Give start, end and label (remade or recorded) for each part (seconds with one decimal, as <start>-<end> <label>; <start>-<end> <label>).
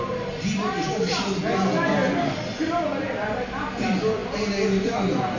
0.0-5.4 recorded